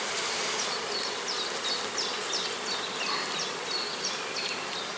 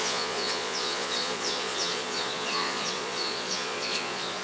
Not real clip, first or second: second